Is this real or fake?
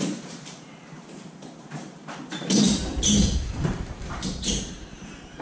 fake